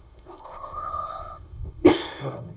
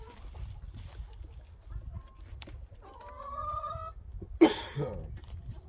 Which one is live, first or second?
second